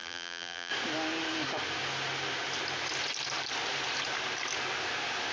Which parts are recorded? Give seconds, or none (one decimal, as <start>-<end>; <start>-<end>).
0.7-5.3